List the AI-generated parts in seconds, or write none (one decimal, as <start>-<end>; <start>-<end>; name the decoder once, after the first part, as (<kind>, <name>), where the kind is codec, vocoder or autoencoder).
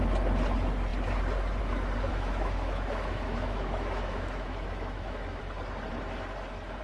2.1-5.4 (autoencoder, DAC-VAE)